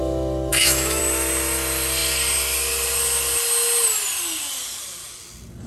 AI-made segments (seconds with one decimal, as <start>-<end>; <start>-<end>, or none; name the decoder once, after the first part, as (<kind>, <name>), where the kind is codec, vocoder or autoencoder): 0.5-1.0 (autoencoder, DAC-VAE)